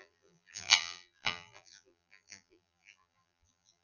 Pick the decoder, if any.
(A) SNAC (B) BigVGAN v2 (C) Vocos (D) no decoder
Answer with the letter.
B